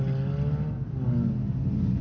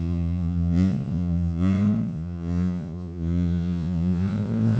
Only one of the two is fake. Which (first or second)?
second